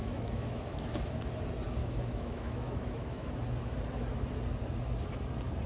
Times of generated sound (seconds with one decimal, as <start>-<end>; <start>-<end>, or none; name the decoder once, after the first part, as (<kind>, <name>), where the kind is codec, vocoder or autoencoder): 0.0-1.2 (autoencoder, DAC-VAE); 1.8-3.3